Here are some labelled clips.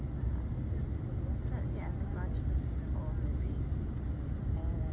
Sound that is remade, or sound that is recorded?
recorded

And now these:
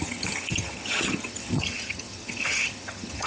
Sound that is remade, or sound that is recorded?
remade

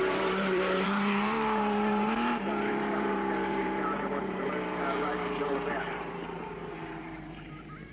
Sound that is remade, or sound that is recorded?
remade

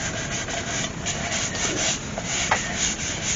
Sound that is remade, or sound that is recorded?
recorded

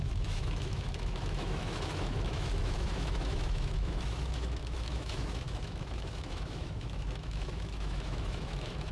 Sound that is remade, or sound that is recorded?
remade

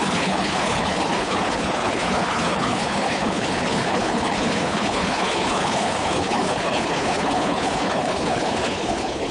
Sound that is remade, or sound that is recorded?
remade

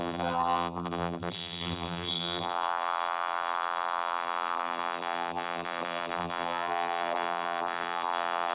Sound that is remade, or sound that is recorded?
remade